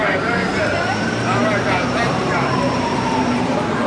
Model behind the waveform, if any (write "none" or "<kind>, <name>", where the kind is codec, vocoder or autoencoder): vocoder, BigVGAN v2